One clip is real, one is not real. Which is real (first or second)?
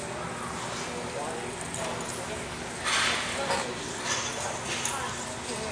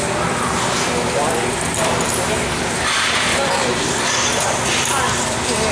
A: first